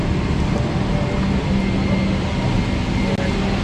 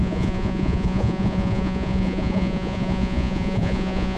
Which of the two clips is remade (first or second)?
second